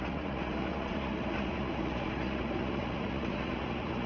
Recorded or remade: remade